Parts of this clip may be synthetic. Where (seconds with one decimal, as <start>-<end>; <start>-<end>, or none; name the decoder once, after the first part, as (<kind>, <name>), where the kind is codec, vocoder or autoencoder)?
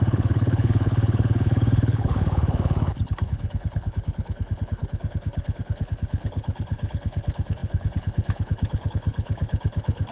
0.0-10.1 (codec, HILCodec)